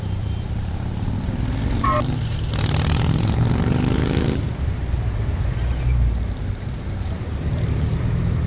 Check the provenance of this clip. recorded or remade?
remade